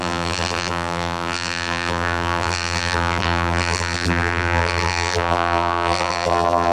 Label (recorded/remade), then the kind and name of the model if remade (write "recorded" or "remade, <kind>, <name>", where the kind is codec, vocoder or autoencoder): remade, vocoder, BigVGAN v2